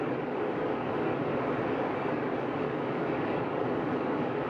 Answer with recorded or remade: remade